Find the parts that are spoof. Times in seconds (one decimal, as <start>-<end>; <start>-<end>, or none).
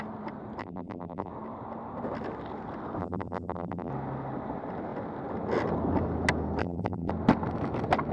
0.6-1.3; 3.0-3.9; 6.6-7.1